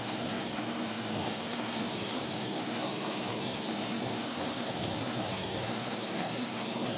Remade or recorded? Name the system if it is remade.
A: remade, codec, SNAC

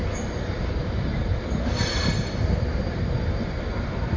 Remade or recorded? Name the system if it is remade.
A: remade, vocoder, BigVGAN v2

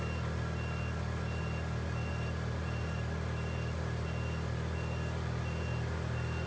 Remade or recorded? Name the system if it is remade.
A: recorded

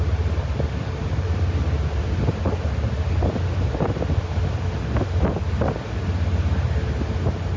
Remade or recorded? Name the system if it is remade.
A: recorded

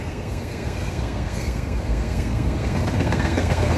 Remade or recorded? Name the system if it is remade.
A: remade, codec, SNAC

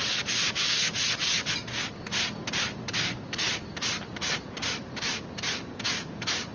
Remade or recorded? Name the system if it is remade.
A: recorded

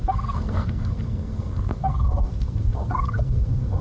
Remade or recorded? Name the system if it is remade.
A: remade, codec, SNAC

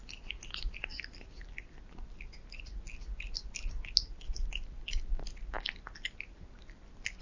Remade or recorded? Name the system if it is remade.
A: recorded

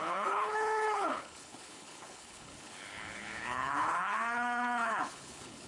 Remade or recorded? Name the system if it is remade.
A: remade, codec, HILCodec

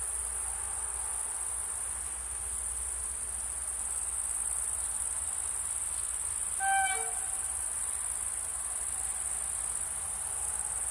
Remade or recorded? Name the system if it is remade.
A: recorded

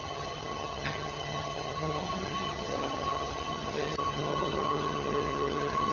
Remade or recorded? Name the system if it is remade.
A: remade, vocoder, HiFi-GAN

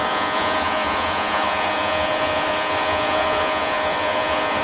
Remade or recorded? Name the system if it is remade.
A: remade, vocoder, Vocos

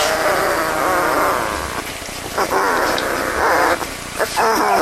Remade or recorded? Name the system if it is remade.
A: recorded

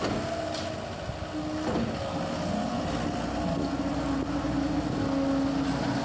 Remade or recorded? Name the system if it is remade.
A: recorded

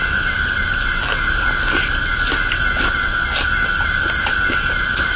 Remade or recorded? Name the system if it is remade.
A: recorded